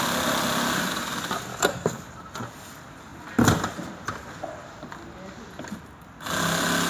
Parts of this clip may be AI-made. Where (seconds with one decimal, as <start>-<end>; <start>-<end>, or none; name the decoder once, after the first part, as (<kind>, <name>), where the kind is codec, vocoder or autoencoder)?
1.5-2.1 (codec, DAC)